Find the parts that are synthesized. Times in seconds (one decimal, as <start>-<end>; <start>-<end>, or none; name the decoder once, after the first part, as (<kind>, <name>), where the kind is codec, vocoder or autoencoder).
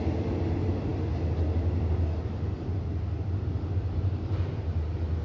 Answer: none